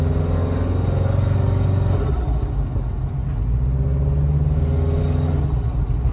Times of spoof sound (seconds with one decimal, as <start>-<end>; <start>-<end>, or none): none